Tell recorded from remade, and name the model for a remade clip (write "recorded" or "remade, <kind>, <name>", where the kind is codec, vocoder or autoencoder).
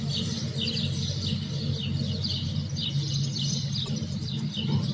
recorded